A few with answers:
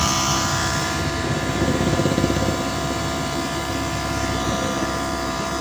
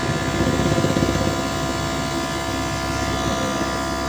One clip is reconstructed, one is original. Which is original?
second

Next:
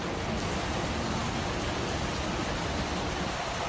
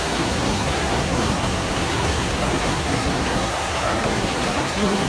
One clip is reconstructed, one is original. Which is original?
first